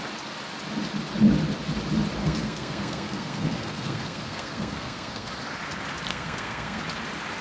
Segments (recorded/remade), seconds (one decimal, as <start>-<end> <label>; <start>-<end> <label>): 0.0-2.2 recorded; 2.2-5.3 remade; 5.3-6.1 recorded; 6.1-6.8 remade; 6.8-7.4 recorded